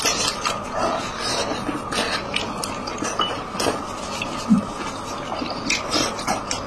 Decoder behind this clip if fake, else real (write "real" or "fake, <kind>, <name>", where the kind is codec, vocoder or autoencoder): real